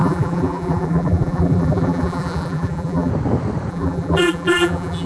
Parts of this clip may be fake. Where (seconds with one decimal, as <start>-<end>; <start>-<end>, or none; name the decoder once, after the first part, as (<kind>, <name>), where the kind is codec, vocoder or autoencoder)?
0.0-3.1 (vocoder, BigVGAN v2); 3.7-5.1

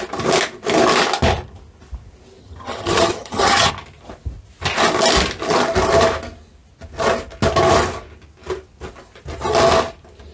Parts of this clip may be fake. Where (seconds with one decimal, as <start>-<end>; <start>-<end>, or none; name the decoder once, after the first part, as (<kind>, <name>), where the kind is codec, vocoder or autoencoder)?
2.4-3.7 (vocoder, HiFi-GAN)

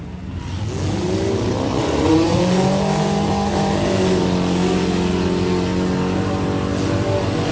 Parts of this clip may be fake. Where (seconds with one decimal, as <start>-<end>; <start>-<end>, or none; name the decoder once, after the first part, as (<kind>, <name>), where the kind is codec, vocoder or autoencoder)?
1.7-2.4 (vocoder, Vocos)

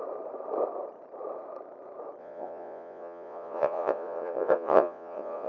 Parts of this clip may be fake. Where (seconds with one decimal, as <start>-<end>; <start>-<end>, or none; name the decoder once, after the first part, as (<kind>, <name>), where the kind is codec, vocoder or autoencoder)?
2.2-5.5 (vocoder, Vocos)

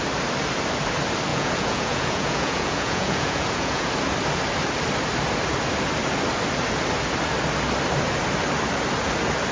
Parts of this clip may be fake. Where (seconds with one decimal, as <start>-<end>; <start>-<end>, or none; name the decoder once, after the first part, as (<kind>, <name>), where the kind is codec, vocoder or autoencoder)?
1.3-3.9 (vocoder, Vocos)

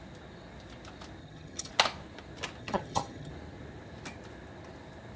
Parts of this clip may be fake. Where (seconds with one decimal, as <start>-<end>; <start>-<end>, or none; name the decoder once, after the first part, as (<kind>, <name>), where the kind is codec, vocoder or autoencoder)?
1.2-1.7 (vocoder, HiFi-GAN); 2.6-3.3

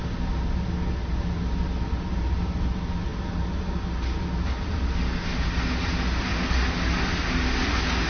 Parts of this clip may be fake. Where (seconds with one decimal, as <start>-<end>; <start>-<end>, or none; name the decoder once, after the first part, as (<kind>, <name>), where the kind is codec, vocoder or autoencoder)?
none

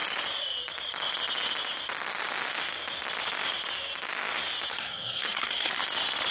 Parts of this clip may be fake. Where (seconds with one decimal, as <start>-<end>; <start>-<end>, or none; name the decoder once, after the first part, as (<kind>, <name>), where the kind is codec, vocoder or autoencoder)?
4.7-5.8 (codec, SNAC)